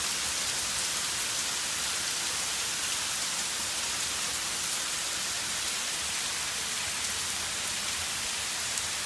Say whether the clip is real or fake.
real